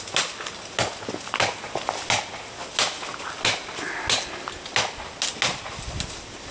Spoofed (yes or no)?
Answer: no